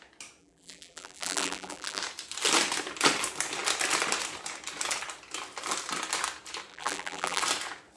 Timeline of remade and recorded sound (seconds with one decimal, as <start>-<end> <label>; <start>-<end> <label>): 0.0-0.4 recorded; 0.4-2.0 remade; 2.0-6.7 recorded; 6.7-7.4 remade; 7.4-8.0 recorded

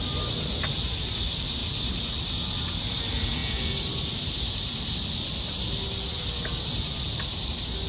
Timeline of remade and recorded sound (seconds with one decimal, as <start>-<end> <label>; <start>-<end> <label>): 0.0-7.9 recorded

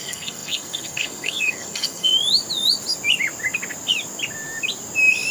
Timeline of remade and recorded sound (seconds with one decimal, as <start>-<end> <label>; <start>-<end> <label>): 0.0-2.1 remade; 2.1-5.3 recorded

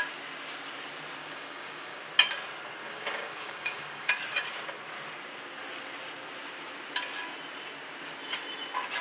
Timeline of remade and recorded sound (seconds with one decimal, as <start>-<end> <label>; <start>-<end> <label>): 0.0-1.2 recorded; 1.2-2.0 remade; 2.0-2.8 recorded; 2.8-4.1 remade; 4.1-9.0 recorded

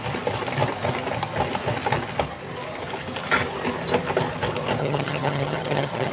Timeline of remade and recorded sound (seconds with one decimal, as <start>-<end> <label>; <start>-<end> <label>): 0.0-4.8 recorded; 4.8-6.1 remade

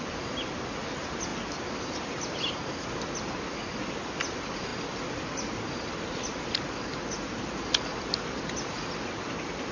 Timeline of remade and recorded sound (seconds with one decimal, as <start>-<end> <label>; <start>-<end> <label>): 0.0-9.7 recorded

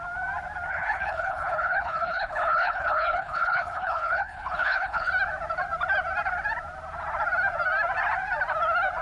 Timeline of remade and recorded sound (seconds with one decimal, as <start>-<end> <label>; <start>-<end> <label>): 0.0-0.7 recorded; 0.7-5.1 remade; 5.1-9.0 recorded

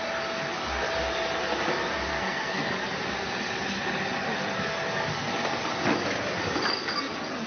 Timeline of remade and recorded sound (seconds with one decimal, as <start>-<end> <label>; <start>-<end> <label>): 0.0-2.1 recorded; 2.1-2.7 remade; 2.7-7.5 recorded